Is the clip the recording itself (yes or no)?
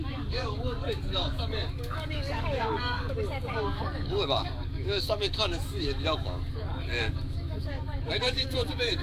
no